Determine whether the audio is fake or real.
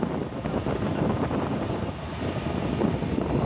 real